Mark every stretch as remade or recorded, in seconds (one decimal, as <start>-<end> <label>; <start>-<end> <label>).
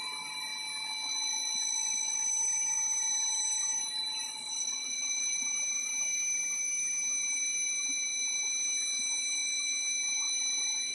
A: 0.0-0.5 remade; 0.5-2.4 recorded; 2.4-10.9 remade